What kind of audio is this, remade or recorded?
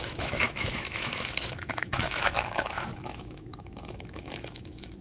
remade